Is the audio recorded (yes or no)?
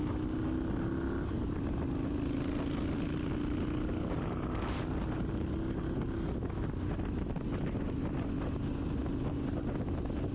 yes